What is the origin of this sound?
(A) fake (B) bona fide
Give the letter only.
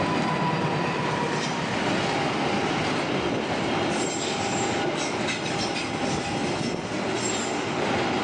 B